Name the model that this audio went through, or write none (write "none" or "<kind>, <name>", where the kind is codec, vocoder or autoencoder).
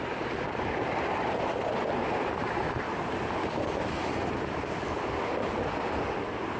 none